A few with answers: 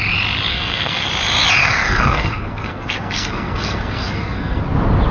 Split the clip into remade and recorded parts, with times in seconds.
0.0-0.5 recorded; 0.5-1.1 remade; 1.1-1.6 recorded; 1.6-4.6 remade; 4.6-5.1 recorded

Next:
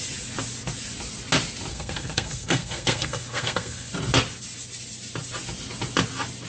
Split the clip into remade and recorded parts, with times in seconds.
0.0-1.7 recorded; 1.7-3.9 remade; 3.9-6.5 recorded

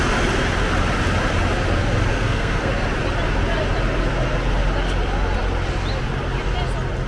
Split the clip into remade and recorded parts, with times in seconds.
0.0-2.1 recorded; 2.1-2.7 remade; 2.7-7.1 recorded

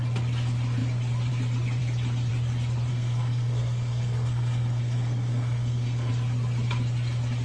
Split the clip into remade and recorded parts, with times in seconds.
0.0-2.9 recorded; 2.9-6.1 remade; 6.1-7.4 recorded

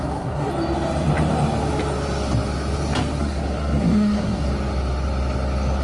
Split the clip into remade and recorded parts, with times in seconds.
0.0-0.5 remade; 0.5-3.2 recorded; 3.2-4.5 remade; 4.5-5.8 recorded